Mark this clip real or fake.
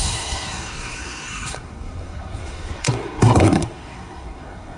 fake